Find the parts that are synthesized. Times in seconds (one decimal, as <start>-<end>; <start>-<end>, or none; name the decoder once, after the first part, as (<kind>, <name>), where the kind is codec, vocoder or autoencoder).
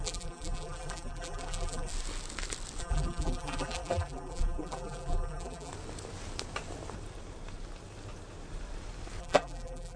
0.0-1.9 (vocoder, BigVGAN v2); 2.8-5.7; 9.2-10.0